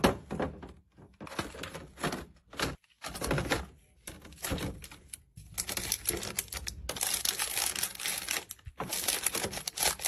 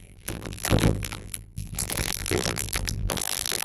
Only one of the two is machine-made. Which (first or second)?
second